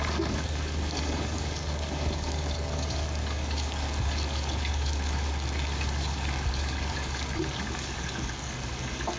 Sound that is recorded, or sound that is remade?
remade